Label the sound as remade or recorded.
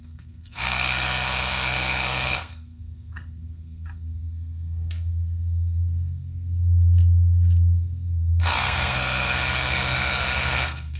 remade